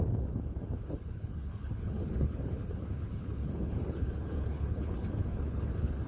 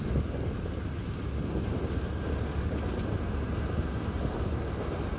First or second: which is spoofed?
first